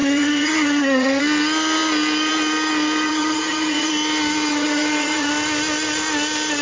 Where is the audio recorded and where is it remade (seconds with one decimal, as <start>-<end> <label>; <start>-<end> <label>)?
0.0-1.2 remade; 1.2-3.1 recorded; 3.1-3.9 remade; 3.9-4.5 recorded; 4.5-5.3 remade; 5.3-6.6 recorded